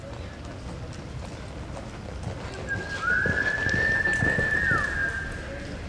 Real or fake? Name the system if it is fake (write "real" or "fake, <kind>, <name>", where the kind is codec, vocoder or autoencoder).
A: real